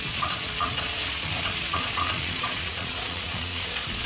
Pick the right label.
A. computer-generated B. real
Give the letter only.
A